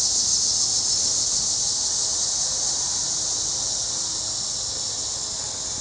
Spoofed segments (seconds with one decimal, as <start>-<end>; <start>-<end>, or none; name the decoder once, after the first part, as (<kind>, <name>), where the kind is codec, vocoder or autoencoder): 2.1-3.5 (vocoder, BigVGAN v2)